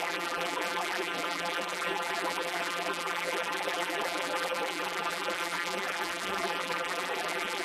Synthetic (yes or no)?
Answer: yes